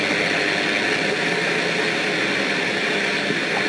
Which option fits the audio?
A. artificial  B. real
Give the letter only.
B